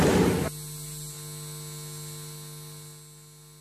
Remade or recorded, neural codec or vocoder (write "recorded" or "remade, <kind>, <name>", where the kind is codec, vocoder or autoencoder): recorded